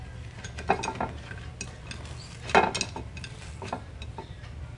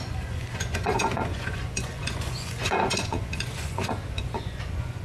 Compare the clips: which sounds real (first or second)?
first